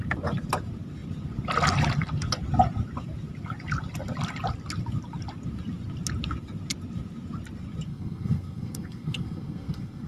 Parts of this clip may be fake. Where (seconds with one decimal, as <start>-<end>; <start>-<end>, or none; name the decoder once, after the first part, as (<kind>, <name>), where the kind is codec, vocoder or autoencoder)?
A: 7.9-10.1 (codec, SNAC)